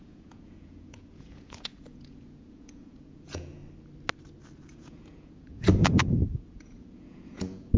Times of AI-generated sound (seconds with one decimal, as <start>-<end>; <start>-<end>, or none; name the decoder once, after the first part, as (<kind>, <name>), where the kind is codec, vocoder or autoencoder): 0.0-3.6 (vocoder, Vocos); 4.7-7.8